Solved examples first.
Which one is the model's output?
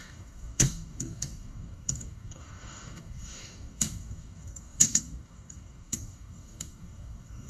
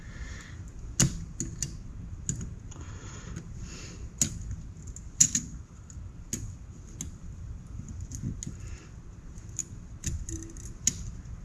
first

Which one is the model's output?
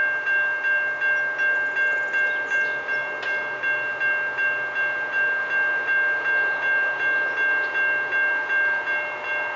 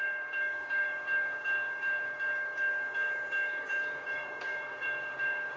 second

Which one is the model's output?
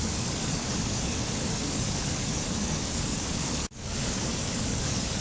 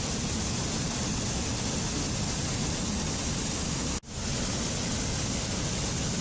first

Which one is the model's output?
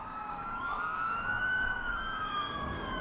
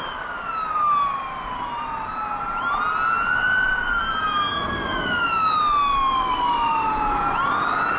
first